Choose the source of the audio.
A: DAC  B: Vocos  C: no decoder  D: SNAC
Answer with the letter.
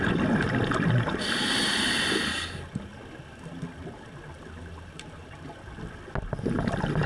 C